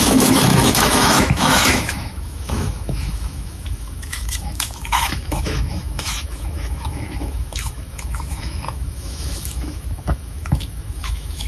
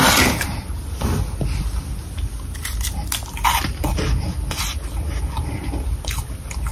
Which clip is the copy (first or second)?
first